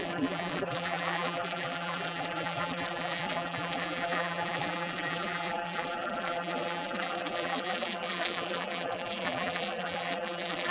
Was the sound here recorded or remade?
remade